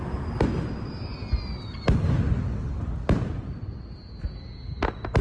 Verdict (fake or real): real